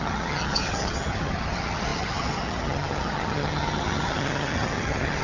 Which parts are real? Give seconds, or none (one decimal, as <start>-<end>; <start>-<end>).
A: none